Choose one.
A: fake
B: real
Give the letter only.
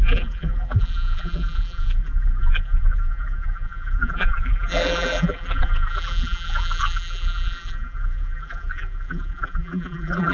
A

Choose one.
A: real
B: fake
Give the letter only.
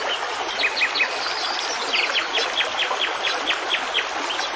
A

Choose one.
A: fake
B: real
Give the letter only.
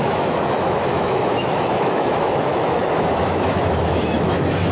A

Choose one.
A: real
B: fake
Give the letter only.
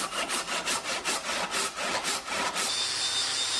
A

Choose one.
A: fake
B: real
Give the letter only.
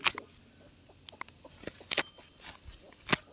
B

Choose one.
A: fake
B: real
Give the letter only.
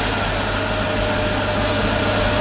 B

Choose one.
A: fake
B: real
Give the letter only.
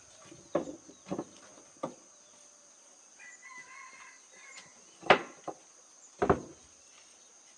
B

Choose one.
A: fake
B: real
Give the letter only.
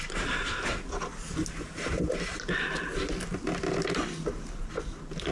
B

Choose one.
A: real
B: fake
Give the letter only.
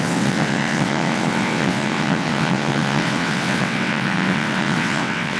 B